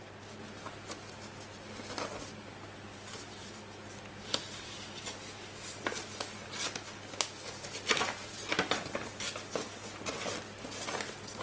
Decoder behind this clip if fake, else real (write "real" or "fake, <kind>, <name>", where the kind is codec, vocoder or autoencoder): real